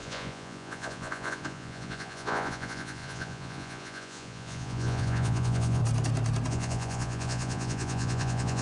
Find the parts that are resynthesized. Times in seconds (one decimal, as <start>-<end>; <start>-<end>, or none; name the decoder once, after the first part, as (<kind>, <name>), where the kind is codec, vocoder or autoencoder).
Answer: 0.0-5.8 (vocoder, Vocos); 6.5-8.6